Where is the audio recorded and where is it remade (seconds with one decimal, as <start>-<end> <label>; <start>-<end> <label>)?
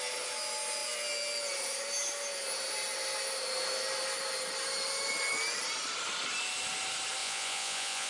0.0-7.2 recorded; 7.2-8.1 remade